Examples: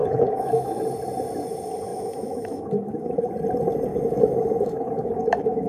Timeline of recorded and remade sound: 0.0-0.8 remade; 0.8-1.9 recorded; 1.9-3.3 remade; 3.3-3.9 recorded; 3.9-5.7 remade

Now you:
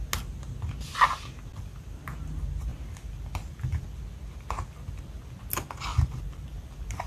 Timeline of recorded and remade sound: 0.0-1.5 recorded; 1.5-2.0 remade; 2.0-2.7 recorded; 2.7-4.0 remade; 4.0-5.9 recorded; 5.9-7.1 remade

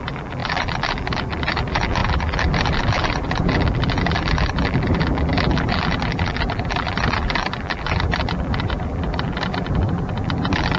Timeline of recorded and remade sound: 0.0-10.8 remade

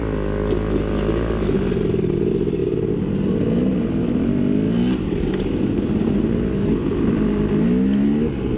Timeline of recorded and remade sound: 0.0-8.6 recorded